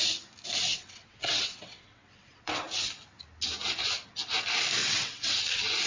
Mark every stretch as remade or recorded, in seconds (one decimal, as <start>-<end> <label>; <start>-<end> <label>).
0.0-0.7 recorded; 0.7-2.6 remade; 2.6-4.8 recorded; 4.8-5.3 remade; 5.3-5.9 recorded